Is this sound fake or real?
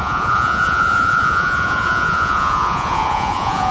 fake